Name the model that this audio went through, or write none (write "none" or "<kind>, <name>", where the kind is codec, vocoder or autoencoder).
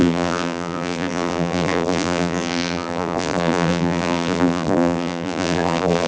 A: vocoder, BigVGAN v2